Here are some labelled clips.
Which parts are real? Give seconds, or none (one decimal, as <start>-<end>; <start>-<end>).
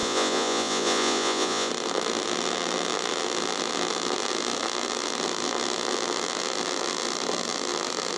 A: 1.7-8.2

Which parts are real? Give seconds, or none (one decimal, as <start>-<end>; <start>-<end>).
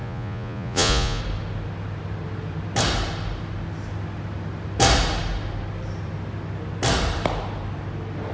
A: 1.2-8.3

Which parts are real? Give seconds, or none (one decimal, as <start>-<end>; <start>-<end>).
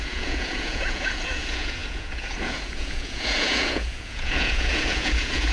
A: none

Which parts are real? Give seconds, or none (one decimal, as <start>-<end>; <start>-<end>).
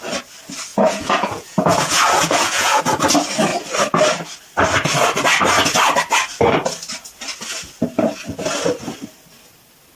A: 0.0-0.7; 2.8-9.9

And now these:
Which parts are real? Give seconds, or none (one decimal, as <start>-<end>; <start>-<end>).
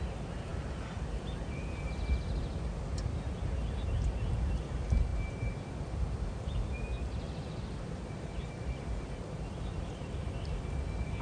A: 0.0-11.2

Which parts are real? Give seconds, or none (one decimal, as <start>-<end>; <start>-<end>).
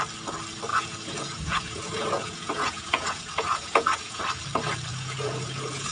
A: 0.0-0.7; 4.2-4.9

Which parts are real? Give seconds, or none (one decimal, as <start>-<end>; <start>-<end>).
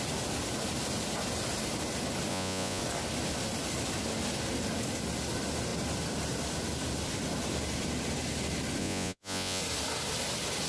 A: 0.0-2.3; 2.8-8.8; 9.6-10.7